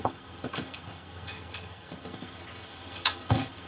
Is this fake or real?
fake